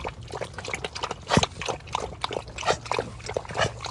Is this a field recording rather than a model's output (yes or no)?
yes